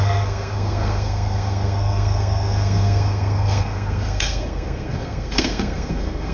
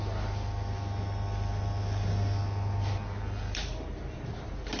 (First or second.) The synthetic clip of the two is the first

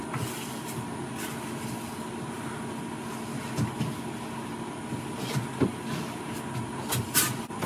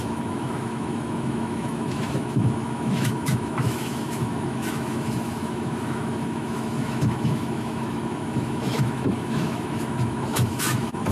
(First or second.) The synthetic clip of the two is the second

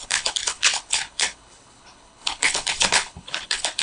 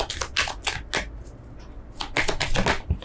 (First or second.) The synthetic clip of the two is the first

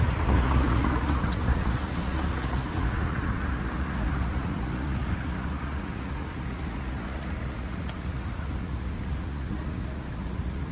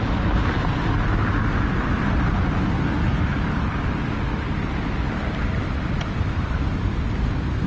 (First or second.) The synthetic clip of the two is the first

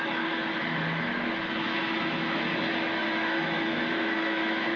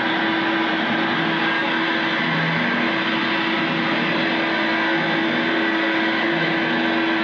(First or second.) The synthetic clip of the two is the first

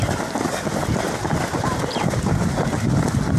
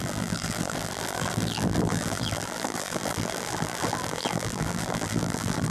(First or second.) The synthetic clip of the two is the second